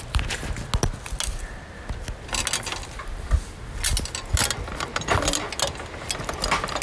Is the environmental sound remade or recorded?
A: recorded